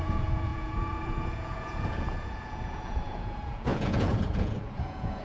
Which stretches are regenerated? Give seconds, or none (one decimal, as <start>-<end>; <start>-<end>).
0.0-5.2